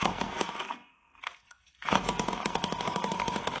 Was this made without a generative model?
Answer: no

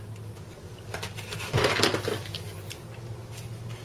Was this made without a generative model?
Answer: yes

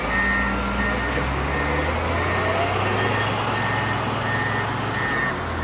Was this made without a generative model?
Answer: yes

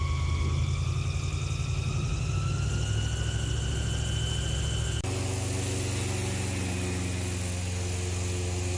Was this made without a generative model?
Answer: yes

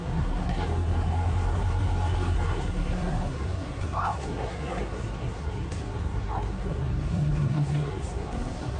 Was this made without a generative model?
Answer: no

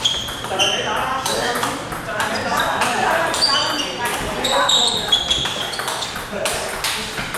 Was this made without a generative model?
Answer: no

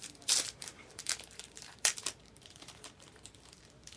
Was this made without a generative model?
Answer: no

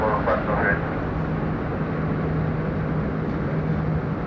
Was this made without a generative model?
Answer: yes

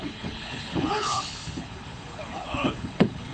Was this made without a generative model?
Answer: no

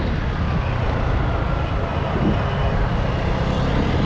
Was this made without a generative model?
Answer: yes